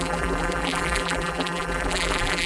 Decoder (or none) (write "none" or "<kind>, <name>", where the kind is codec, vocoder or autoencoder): vocoder, BigVGAN v2